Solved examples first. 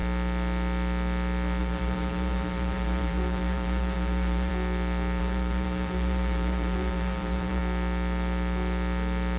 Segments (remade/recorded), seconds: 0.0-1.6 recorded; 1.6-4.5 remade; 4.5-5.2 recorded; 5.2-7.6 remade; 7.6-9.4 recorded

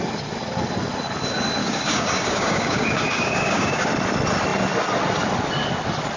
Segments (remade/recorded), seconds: 0.0-1.6 recorded; 1.6-3.9 remade; 3.9-6.2 recorded

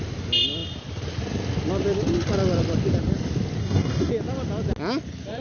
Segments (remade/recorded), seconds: 0.0-3.6 recorded; 3.6-4.1 remade; 4.1-5.4 recorded

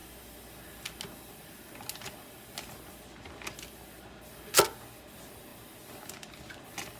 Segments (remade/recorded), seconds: 0.0-7.0 recorded

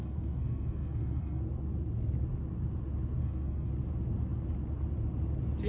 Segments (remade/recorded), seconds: 0.0-1.4 remade; 1.4-3.2 recorded; 3.2-3.7 remade; 3.7-5.7 recorded